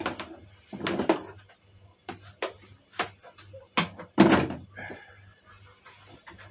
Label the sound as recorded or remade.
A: recorded